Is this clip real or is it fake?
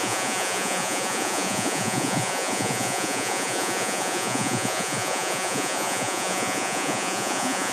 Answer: fake